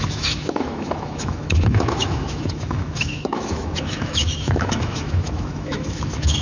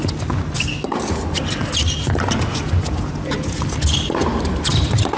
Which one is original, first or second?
second